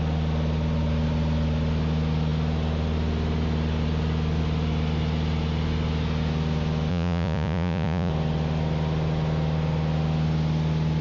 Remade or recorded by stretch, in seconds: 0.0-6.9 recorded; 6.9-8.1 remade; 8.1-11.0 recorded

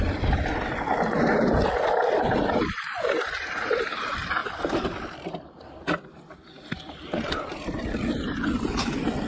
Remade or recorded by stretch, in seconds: 0.0-9.3 remade

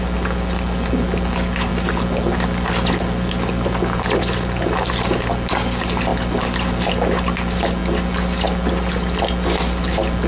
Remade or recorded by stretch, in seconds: 0.0-10.3 recorded

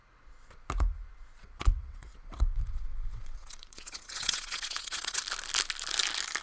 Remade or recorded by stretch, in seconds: 0.0-1.4 recorded; 1.4-5.2 remade; 5.2-6.4 recorded

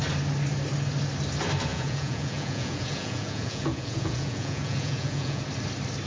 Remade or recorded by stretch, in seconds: 0.0-1.7 recorded; 1.7-5.4 remade; 5.4-6.1 recorded

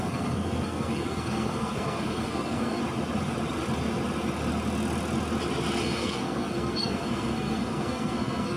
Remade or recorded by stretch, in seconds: 0.0-2.8 remade; 2.8-5.8 recorded; 5.8-8.6 remade

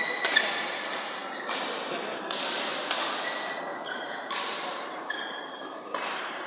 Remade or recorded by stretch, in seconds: 0.0-3.7 recorded; 3.7-6.5 remade